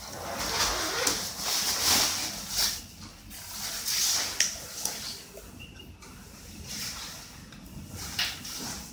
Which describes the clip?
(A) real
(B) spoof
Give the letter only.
A